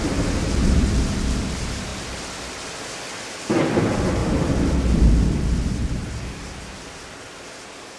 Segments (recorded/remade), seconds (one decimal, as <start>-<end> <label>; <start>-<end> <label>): 0.0-8.0 recorded